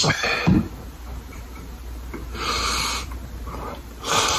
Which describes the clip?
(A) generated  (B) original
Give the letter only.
A